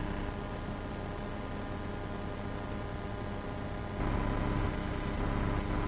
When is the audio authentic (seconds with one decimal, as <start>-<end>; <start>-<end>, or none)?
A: 0.0-5.9